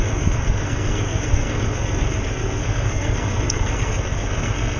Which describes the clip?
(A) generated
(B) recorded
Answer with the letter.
A